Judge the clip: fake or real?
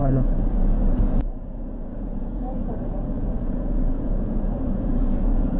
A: fake